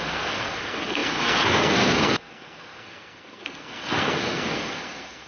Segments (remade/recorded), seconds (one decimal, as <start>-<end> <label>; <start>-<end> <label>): 0.0-5.3 remade